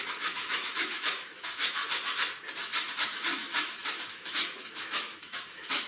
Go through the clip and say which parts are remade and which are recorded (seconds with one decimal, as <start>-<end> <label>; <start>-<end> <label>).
0.0-1.8 remade; 1.8-2.9 recorded; 2.9-5.9 remade